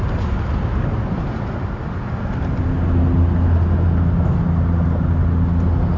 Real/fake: real